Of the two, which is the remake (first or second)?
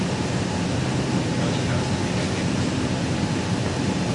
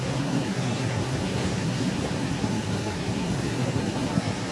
second